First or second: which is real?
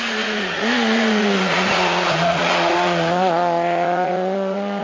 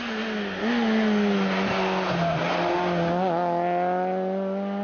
second